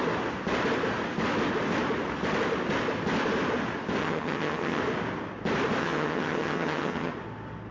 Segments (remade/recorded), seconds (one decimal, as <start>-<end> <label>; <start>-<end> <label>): 0.0-4.0 recorded; 4.0-4.8 remade; 4.8-5.8 recorded; 5.8-7.1 remade; 7.1-7.7 recorded